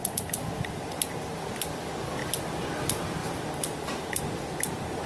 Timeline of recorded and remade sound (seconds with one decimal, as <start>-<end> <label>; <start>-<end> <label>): 0.0-3.2 recorded; 3.2-4.2 remade; 4.2-5.1 recorded